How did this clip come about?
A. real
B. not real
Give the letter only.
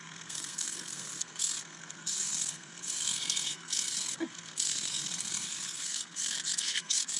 B